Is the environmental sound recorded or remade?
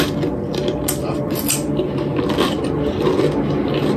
recorded